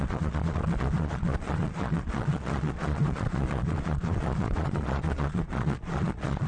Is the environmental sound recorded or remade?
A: remade